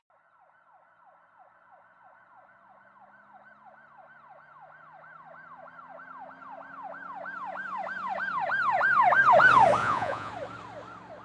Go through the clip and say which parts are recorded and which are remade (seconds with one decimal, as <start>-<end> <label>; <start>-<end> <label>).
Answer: 0.0-9.8 recorded; 9.8-10.3 remade; 10.3-11.2 recorded